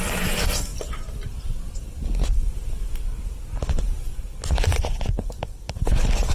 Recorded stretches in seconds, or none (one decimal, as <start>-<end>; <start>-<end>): 0.0-6.3